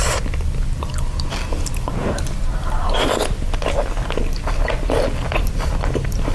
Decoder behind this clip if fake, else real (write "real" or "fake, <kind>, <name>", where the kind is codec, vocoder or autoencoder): real